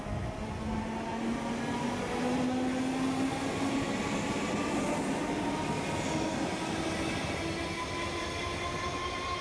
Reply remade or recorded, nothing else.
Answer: recorded